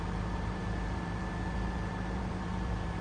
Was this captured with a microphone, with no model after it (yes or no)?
no